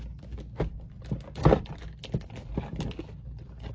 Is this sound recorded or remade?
recorded